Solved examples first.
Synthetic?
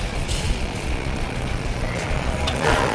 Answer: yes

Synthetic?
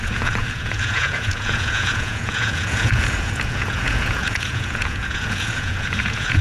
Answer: yes